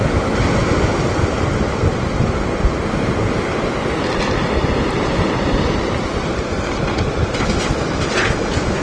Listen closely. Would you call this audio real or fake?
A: real